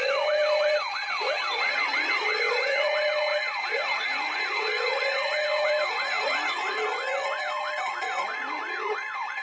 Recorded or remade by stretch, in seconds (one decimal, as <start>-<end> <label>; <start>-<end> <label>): 0.0-9.4 remade